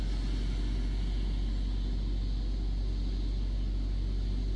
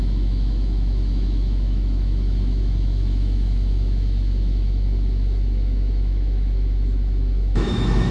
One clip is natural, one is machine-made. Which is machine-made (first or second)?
second